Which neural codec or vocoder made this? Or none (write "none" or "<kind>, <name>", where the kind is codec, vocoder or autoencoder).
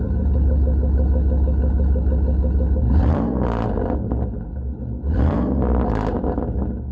none